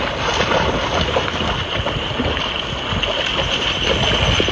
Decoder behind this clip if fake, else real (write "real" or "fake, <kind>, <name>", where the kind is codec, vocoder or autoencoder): real